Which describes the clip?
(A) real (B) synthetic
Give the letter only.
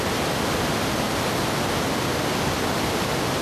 A